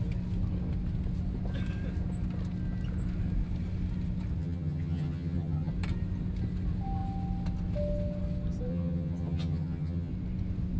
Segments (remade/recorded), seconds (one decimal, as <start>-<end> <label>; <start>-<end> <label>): 0.0-4.4 recorded; 4.4-5.7 remade; 5.7-8.7 recorded; 8.7-10.1 remade; 10.1-10.8 recorded